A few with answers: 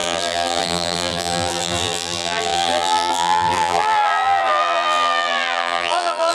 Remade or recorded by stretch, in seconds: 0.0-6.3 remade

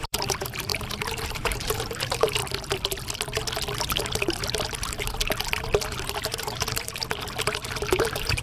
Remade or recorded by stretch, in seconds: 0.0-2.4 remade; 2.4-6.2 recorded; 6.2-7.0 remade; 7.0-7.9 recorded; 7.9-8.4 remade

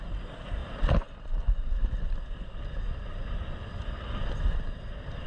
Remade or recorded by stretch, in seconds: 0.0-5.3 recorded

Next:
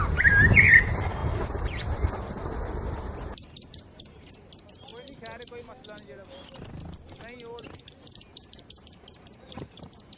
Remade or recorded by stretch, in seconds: 0.0-4.9 remade; 4.9-8.1 recorded; 8.1-10.2 remade